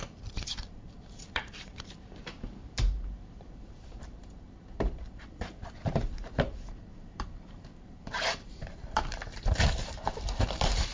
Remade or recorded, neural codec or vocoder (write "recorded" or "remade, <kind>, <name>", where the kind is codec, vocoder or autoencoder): remade, vocoder, BigVGAN v2